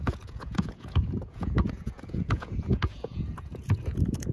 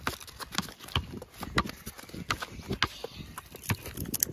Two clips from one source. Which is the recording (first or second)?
second